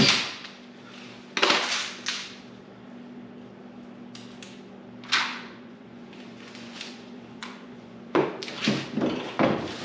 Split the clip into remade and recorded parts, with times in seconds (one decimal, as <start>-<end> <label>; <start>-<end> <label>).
0.0-5.3 recorded; 5.3-8.3 remade; 8.3-9.8 recorded